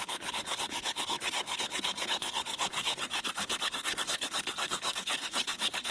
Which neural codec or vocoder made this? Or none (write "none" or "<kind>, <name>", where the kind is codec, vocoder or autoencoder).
codec, HILCodec